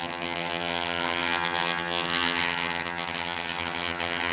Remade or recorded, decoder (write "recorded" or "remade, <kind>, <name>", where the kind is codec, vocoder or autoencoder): remade, vocoder, HiFi-GAN